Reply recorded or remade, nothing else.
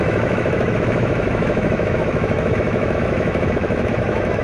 remade